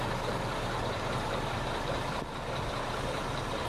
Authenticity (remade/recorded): remade